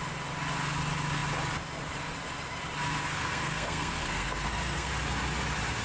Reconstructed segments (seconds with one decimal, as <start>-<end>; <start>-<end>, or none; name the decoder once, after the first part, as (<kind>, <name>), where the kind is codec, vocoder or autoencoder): 3.1-4.9 (codec, SNAC)